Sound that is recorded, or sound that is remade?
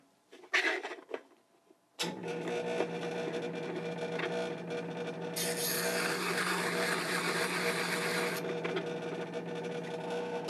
recorded